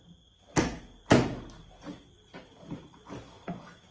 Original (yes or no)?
yes